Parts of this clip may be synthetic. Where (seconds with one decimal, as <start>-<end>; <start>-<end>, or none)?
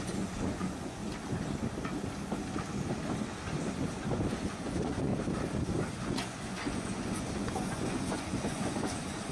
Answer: 0.0-1.0; 4.3-5.1; 6.0-9.3